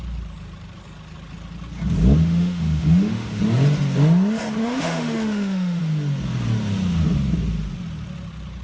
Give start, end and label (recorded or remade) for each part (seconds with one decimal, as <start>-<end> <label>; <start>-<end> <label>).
0.0-2.2 recorded; 2.2-3.4 remade; 3.4-4.6 recorded; 4.6-5.8 remade; 5.8-8.6 recorded